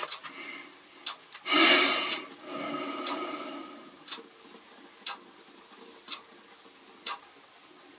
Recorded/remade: recorded